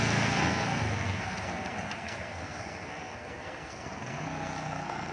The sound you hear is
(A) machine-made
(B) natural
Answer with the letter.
A